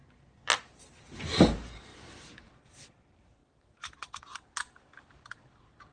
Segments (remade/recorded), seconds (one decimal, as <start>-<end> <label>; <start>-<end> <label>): 0.0-1.9 recorded; 1.9-2.5 remade; 2.5-3.4 recorded; 3.4-4.2 remade; 4.2-5.9 recorded